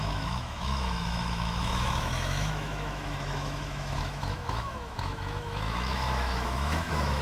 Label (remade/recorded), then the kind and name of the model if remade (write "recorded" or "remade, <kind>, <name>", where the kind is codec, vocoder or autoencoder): remade, autoencoder, DAC-VAE